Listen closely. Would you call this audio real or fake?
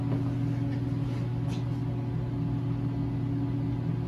real